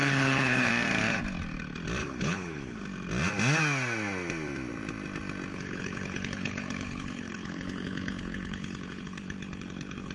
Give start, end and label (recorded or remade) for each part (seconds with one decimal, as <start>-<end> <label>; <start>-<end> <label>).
0.0-0.7 remade; 0.7-2.0 recorded; 2.0-2.8 remade; 2.8-5.5 recorded; 5.5-10.1 remade